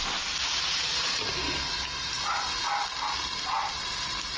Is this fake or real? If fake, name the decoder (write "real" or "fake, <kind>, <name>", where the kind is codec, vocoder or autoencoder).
real